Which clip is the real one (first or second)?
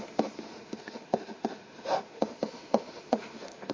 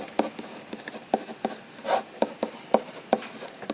second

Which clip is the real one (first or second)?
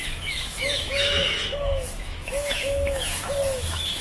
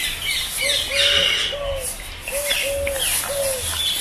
second